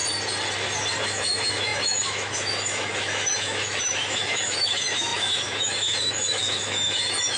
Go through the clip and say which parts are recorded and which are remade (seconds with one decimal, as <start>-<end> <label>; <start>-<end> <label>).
0.0-1.0 recorded; 1.0-7.4 remade